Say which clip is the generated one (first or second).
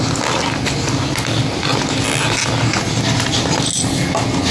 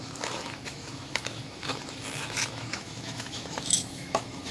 second